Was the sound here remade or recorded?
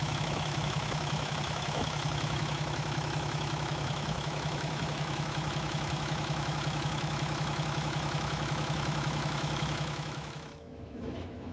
remade